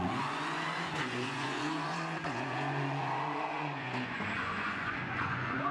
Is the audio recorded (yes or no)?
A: no